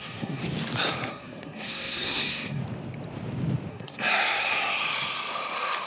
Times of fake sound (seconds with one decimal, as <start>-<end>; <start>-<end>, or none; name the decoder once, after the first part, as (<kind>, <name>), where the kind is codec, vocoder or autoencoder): 0.0-0.4 (codec, SNAC); 1.1-2.6; 3.7-4.8